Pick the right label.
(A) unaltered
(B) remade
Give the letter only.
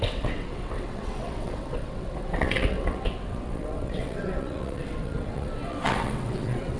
B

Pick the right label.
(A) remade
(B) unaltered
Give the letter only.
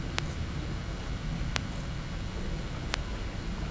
B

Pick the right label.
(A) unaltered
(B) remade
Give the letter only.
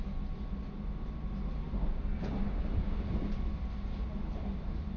A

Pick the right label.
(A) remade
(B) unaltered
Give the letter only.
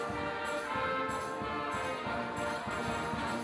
B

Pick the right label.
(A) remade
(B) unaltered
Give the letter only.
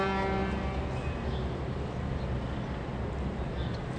B